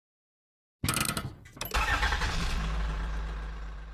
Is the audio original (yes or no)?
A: yes